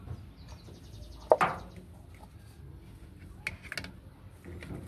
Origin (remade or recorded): recorded